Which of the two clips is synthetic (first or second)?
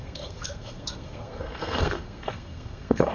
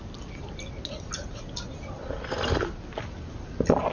first